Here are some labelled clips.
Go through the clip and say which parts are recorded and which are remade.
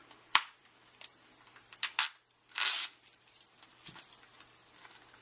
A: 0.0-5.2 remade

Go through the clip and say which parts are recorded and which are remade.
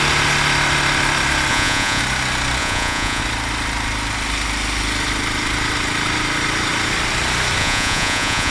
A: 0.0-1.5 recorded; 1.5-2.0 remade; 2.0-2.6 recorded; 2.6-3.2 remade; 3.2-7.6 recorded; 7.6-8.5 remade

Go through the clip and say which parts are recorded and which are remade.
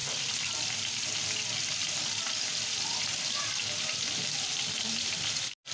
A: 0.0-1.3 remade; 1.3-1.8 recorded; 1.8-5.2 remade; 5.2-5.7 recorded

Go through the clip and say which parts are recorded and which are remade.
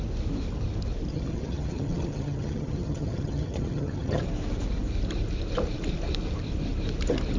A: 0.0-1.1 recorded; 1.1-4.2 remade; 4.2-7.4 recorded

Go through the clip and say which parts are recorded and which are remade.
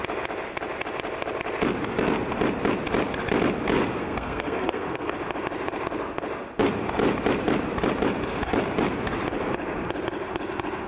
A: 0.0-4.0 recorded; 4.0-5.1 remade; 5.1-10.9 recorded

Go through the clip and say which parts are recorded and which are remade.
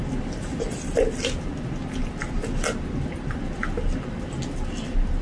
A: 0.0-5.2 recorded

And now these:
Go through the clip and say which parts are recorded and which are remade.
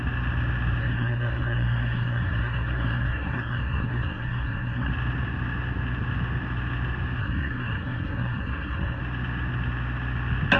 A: 0.0-0.8 recorded; 0.8-4.9 remade; 4.9-7.2 recorded; 7.2-9.0 remade; 9.0-10.6 recorded